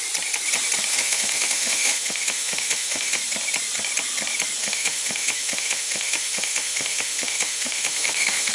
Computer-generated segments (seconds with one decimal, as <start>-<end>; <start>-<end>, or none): 0.9-3.2; 4.6-8.5